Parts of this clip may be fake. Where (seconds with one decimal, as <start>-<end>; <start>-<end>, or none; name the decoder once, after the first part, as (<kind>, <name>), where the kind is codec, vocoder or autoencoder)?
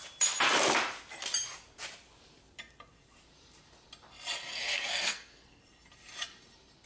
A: 4.5-5.6 (codec, SNAC)